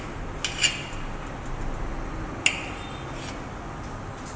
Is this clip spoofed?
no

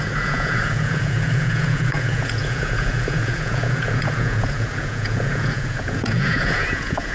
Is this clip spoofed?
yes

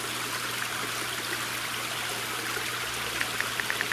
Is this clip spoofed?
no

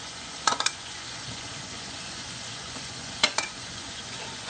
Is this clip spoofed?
yes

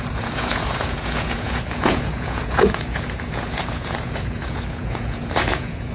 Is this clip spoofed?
yes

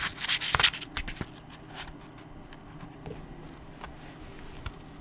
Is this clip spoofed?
no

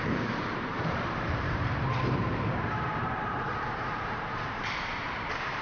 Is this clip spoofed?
yes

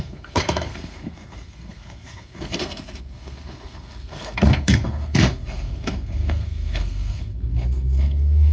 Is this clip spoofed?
yes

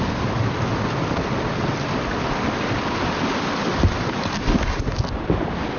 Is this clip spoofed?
no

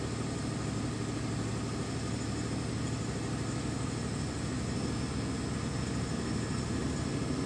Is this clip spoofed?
no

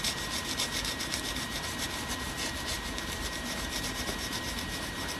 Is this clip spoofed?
yes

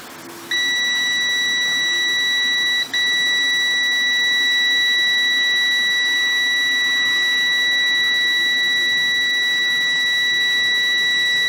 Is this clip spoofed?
no